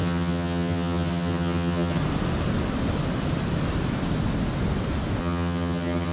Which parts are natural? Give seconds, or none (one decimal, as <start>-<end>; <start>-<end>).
2.0-5.2